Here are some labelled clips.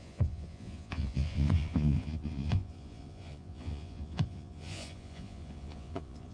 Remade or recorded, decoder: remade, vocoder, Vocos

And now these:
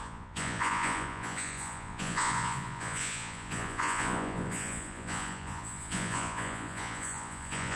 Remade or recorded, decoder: remade, vocoder, Vocos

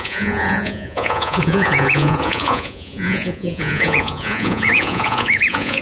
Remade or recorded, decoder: remade, vocoder, Vocos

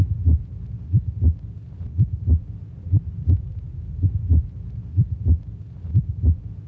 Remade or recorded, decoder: recorded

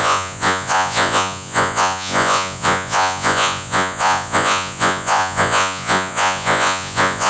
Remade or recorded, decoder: remade, vocoder, Vocos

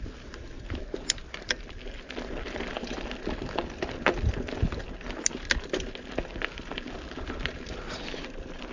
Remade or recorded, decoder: recorded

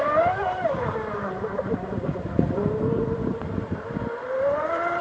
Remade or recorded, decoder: recorded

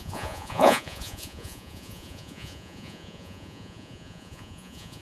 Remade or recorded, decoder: remade, vocoder, Vocos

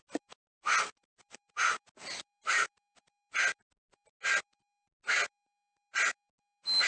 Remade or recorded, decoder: recorded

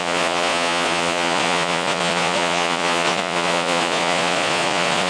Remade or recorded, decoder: remade, vocoder, Vocos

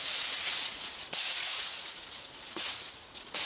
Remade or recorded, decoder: remade, vocoder, Vocos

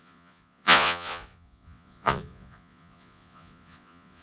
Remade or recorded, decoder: remade, vocoder, Vocos